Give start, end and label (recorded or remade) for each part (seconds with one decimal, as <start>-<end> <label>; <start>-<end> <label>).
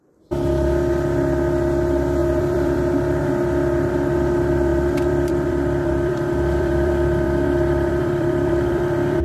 0.0-2.2 recorded; 2.2-2.8 remade; 2.8-4.7 recorded; 4.7-9.2 remade